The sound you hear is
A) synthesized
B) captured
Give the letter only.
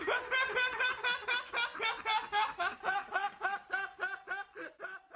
B